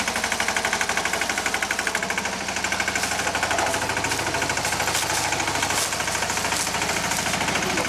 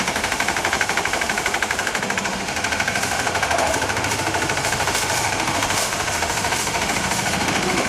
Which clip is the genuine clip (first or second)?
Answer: first